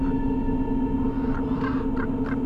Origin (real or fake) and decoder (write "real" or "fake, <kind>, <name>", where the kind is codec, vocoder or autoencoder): real